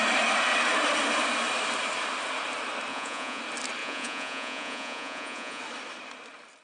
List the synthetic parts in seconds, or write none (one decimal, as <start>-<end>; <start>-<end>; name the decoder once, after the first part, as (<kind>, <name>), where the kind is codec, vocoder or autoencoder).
2.9-3.4 (vocoder, Vocos); 3.8-5.6